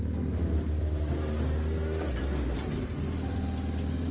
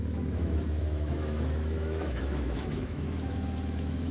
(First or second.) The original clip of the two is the first